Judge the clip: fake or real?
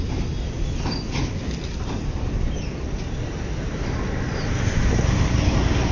real